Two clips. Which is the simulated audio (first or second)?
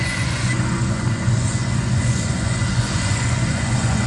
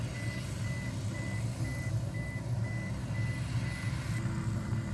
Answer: first